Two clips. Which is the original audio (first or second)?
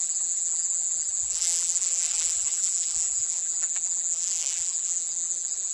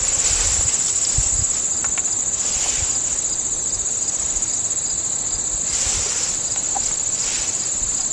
second